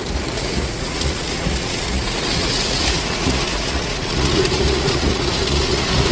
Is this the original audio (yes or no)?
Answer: no